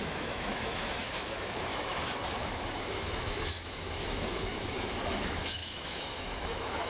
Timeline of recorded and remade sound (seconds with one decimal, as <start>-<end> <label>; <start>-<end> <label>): 0.0-6.9 remade